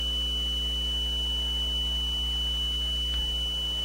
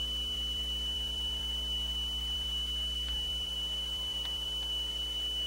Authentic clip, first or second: first